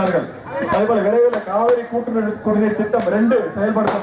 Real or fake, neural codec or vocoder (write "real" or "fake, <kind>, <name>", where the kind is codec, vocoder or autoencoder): real